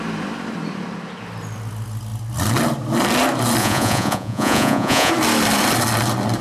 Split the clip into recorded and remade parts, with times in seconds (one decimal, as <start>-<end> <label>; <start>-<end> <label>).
0.0-3.6 recorded; 3.6-5.1 remade; 5.1-6.4 recorded